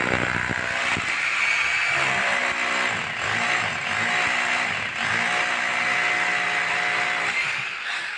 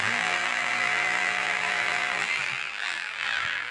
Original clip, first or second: first